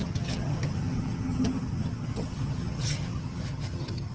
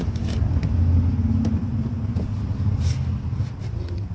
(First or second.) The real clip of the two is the second